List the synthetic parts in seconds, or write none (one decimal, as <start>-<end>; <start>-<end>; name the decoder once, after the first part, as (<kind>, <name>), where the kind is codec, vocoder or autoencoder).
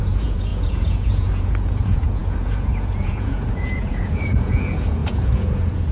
0.0-5.9 (vocoder, Vocos)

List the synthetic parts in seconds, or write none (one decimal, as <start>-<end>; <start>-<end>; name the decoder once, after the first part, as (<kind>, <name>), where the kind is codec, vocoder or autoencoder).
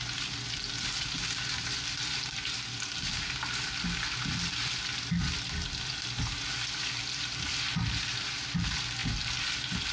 none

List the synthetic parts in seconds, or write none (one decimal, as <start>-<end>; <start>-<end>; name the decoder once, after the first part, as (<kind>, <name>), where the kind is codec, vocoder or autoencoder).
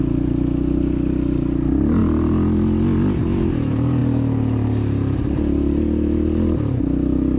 none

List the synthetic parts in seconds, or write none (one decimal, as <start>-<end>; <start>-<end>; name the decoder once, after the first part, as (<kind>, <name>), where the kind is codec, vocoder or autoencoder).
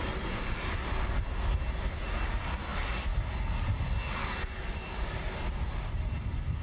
none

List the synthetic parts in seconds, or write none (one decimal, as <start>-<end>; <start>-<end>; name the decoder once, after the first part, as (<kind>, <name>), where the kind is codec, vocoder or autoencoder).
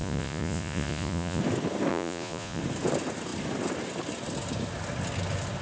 0.0-1.4 (vocoder, Vocos); 1.9-2.6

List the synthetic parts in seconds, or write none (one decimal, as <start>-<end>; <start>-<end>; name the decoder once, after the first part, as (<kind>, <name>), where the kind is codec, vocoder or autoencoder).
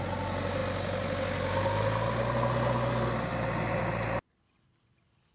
none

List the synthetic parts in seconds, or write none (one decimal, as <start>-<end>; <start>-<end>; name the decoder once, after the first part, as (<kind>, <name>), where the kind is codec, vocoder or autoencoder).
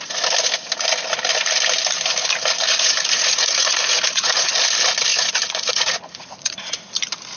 2.7-4.5 (vocoder, Vocos); 5.1-6.9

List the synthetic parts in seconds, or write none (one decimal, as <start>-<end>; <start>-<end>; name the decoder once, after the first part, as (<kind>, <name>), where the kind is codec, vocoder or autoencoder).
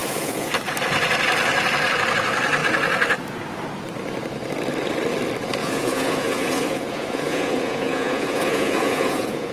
0.0-0.5 (vocoder, Vocos); 5.6-9.5